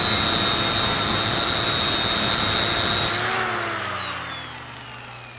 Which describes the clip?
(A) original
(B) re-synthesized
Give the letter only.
A